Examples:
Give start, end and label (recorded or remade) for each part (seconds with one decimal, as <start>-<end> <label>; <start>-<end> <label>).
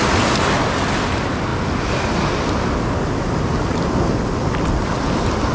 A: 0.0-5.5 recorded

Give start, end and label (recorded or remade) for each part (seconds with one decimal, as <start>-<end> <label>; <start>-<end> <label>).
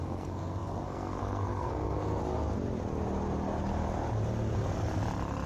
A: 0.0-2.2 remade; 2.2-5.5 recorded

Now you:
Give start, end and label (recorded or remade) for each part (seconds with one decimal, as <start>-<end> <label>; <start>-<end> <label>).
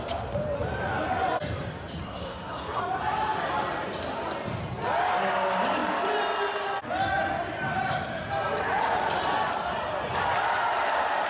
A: 0.0-2.0 recorded; 2.0-2.8 remade; 2.8-11.3 recorded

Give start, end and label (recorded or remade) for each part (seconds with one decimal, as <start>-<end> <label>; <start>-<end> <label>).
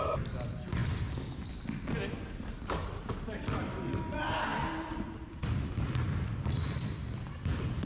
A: 0.0-2.8 recorded; 2.8-3.4 remade; 3.4-4.5 recorded; 4.5-5.8 remade; 5.8-7.9 recorded